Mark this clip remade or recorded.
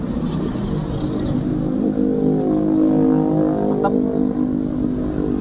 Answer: recorded